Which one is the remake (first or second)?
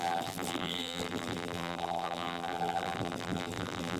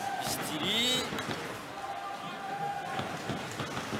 first